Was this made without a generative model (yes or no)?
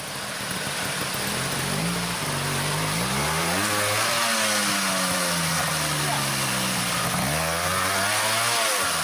yes